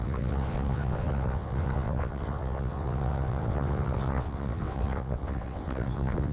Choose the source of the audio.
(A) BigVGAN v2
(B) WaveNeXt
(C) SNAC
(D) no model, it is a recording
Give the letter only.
B